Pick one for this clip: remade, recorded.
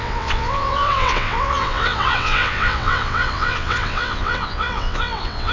remade